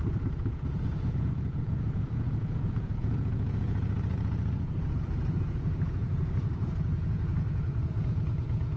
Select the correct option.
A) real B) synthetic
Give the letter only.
B